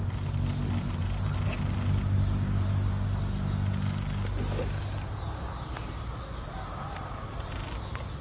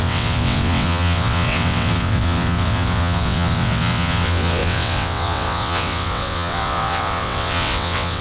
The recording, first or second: first